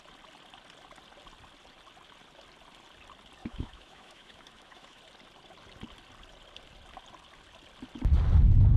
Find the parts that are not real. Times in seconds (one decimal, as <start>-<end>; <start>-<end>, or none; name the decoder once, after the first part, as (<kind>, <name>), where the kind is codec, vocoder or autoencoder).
3.4-5.0 (autoencoder, DAC-VAE)